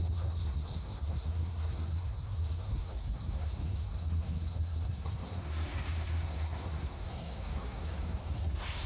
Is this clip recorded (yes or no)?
no